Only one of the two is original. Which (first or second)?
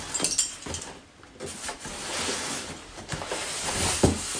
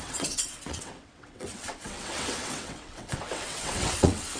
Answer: first